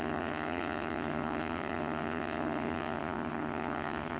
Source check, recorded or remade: remade